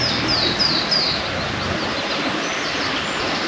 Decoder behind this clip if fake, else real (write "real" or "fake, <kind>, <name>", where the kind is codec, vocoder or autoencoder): real